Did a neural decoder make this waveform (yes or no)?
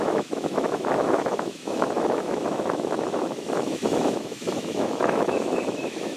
yes